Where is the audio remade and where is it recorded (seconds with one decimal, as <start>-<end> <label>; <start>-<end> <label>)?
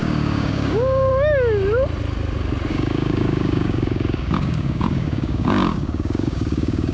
0.0-1.1 remade; 1.1-2.7 recorded; 2.7-6.9 remade